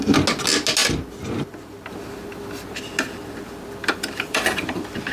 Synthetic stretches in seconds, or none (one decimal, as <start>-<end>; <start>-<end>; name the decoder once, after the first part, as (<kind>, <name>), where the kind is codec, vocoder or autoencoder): 3.8-5.1 (vocoder, BigVGAN v2)